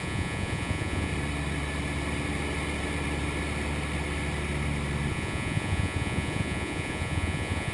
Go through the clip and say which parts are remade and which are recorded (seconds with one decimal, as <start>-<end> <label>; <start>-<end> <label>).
0.0-1.1 remade; 1.1-5.1 recorded; 5.1-7.7 remade